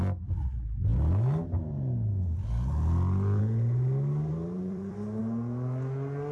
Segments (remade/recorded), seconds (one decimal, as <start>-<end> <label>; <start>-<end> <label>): 0.0-4.3 recorded; 4.3-5.2 remade; 5.2-6.3 recorded